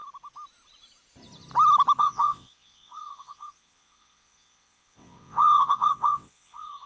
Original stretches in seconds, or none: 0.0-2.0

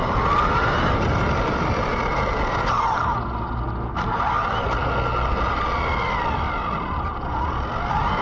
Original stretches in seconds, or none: 0.0-8.2